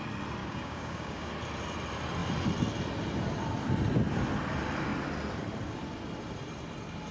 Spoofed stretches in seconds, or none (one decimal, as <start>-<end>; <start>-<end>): 0.4-1.3